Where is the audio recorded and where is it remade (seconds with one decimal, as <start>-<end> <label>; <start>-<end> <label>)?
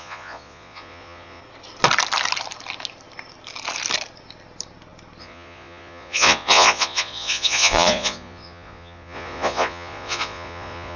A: 0.0-1.4 remade; 1.4-5.2 recorded; 5.2-11.0 remade